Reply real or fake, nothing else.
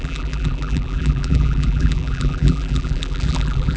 fake